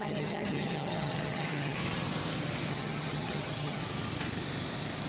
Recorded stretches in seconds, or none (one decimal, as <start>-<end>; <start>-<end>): 1.8-2.7; 3.8-5.1